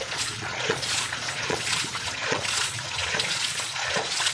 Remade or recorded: remade